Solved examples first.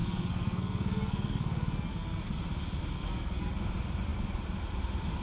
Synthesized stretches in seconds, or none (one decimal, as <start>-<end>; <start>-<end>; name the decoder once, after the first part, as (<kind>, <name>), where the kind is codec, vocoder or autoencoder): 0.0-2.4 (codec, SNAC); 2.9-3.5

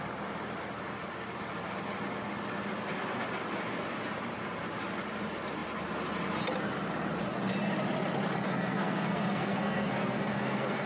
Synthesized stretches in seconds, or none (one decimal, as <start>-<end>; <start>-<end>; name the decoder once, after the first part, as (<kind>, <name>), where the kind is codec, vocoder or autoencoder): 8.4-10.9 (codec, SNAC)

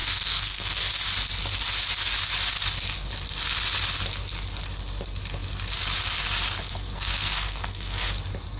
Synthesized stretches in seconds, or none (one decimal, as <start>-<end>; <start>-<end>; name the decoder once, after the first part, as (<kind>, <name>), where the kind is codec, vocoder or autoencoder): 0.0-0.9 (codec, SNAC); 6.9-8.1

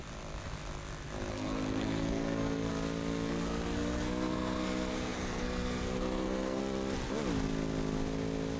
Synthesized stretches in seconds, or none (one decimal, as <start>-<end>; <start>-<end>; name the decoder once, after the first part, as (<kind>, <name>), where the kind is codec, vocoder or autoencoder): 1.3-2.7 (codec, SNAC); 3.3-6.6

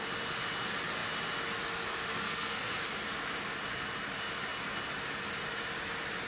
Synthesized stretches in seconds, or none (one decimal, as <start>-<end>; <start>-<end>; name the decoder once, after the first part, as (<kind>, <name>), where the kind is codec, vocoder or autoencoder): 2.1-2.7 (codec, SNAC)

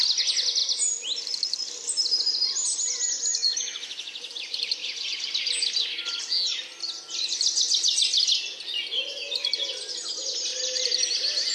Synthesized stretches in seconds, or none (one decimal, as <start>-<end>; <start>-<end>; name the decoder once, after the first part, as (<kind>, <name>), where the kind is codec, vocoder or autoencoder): none